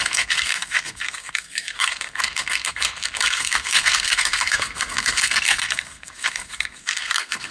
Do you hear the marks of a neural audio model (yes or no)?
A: yes